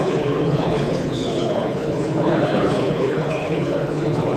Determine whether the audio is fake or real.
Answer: fake